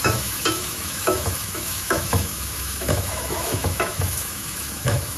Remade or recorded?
remade